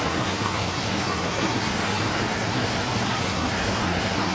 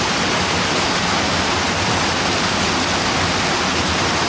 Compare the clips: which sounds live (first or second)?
second